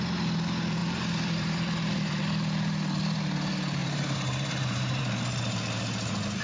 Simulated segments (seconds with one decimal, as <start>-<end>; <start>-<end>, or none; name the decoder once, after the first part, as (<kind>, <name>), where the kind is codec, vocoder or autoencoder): 0.8-2.2 (vocoder, BigVGAN v2); 3.8-5.0